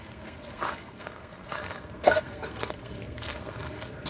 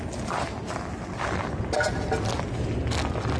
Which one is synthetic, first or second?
first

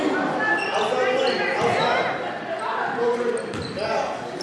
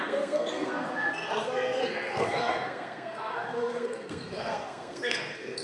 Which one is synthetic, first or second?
second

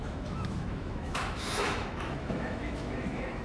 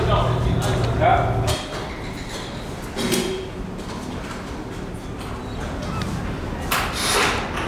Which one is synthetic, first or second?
first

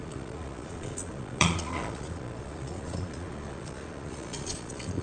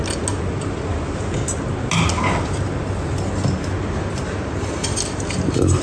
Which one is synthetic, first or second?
first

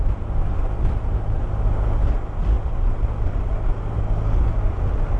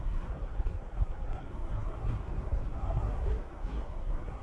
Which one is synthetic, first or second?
second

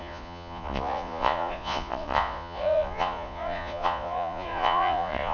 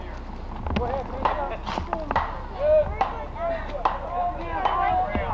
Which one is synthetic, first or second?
first